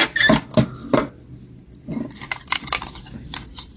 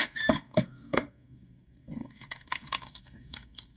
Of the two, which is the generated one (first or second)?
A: second